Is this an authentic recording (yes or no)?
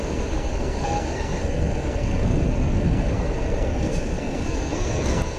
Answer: no